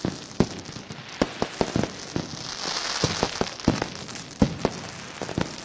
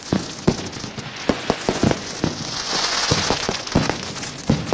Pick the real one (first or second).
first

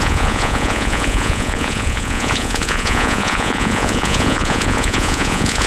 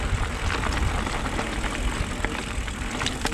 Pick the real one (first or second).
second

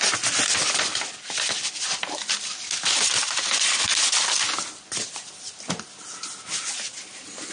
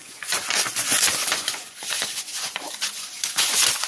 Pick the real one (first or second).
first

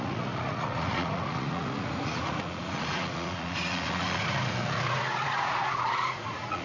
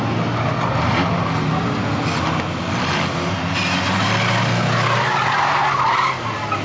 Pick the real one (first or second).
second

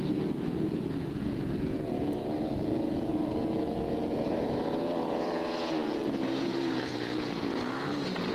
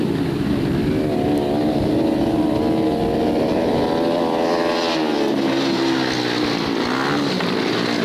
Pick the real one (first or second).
second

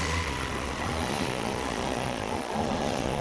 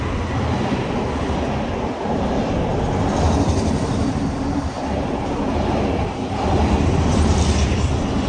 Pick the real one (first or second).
second